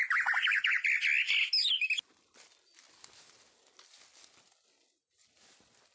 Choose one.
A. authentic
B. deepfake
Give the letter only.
A